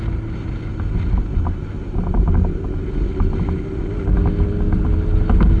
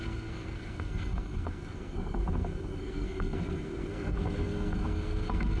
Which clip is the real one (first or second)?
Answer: first